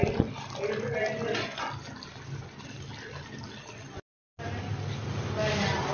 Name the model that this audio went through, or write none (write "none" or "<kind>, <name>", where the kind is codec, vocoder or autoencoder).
none